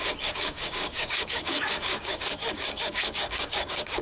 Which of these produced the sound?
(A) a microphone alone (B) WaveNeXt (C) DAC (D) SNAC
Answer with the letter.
C